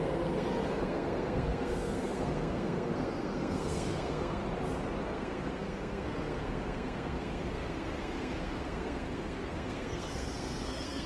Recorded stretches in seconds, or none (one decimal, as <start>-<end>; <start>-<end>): 4.4-5.0

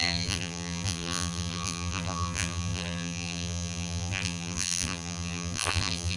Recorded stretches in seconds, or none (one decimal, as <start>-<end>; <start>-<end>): none

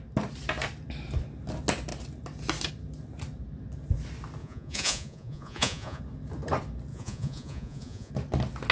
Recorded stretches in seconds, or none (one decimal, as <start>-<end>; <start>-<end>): 0.0-4.4; 6.0-6.9; 8.1-8.7

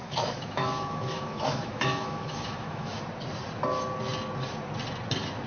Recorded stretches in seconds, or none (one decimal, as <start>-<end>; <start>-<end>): 3.0-5.5

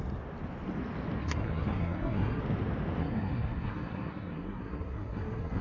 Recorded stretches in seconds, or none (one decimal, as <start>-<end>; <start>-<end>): 0.0-1.2; 2.4-3.0

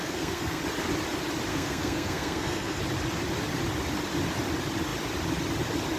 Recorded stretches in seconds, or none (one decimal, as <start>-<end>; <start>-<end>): 0.6-1.5; 2.8-6.0

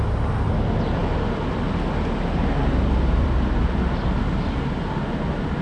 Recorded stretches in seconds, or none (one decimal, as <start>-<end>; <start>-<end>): 0.0-5.6

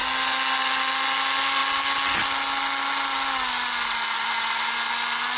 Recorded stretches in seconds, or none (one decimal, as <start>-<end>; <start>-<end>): 0.0-5.4